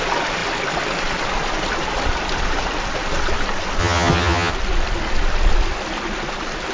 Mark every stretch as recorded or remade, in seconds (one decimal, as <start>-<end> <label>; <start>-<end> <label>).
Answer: 0.0-3.8 recorded; 3.8-4.5 remade; 4.5-6.7 recorded